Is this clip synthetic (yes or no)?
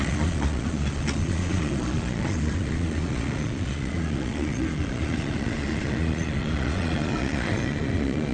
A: yes